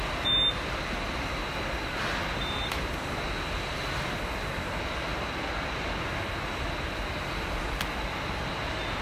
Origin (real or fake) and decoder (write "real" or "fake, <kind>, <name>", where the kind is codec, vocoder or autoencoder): real